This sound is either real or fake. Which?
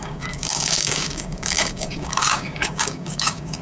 fake